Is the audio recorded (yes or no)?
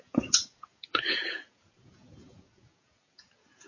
no